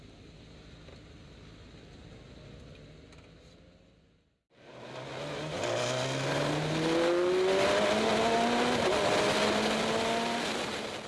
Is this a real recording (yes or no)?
yes